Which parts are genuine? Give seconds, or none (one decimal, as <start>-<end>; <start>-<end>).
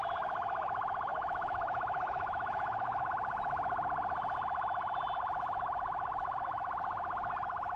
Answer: 0.0-1.1; 3.1-7.8